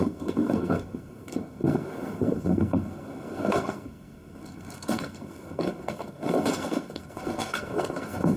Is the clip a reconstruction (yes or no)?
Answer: yes